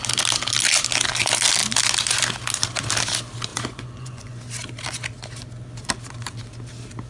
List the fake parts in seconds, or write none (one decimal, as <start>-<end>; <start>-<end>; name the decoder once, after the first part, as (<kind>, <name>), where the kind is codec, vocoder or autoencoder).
3.5-4.4 (vocoder, Vocos)